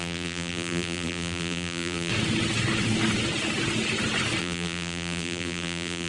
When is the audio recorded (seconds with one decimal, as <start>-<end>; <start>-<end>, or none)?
2.1-4.4